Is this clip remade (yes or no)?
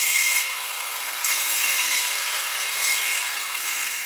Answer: yes